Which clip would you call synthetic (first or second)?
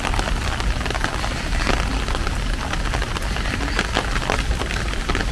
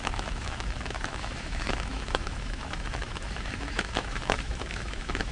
second